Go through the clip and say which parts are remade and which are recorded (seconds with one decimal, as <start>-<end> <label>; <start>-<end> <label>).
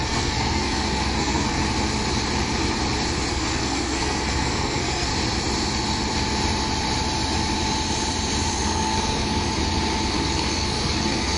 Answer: 0.0-1.6 remade; 1.6-3.3 recorded; 3.3-5.1 remade; 5.1-8.5 recorded; 8.5-9.6 remade; 9.6-10.1 recorded; 10.1-11.4 remade